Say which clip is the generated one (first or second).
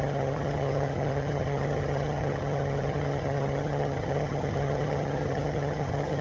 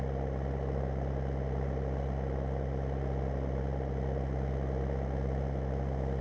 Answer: first